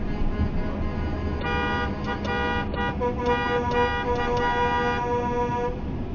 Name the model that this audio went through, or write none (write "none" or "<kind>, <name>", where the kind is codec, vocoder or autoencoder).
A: none